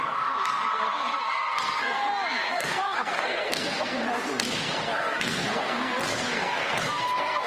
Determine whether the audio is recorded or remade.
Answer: remade